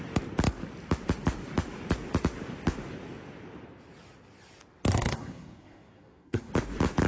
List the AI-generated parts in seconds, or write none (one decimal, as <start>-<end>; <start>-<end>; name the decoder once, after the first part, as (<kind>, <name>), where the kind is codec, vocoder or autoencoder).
4.9-6.5 (codec, SNAC)